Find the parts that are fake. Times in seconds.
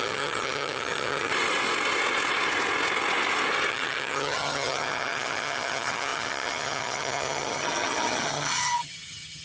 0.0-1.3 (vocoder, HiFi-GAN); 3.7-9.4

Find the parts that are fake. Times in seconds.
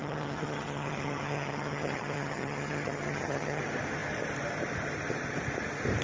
0.0-3.6 (vocoder, HiFi-GAN)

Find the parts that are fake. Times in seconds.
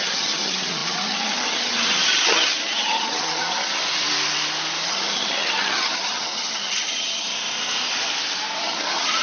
0.0-3.8 (vocoder, HiFi-GAN); 4.8-7.3; 8.6-9.2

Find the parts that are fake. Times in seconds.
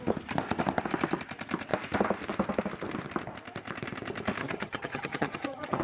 4.4-5.8 (vocoder, HiFi-GAN)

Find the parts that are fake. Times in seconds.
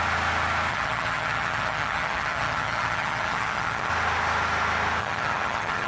0.7-3.9 (vocoder, HiFi-GAN); 5.0-5.9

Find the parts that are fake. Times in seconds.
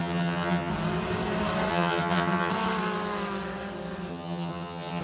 0.0-0.7 (vocoder, HiFi-GAN); 1.7-2.5; 4.1-5.0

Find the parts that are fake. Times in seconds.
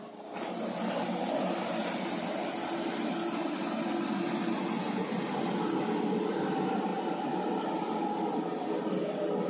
none